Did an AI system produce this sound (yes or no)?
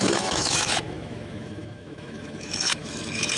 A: yes